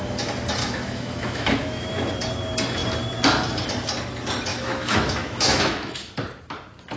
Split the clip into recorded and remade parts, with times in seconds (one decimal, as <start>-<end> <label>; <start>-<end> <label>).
0.0-0.6 recorded; 0.6-2.1 remade; 2.1-4.5 recorded; 4.5-6.1 remade; 6.1-7.0 recorded